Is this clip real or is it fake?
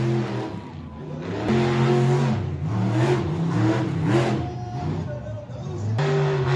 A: real